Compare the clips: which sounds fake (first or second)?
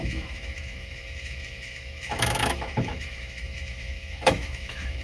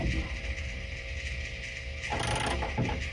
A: first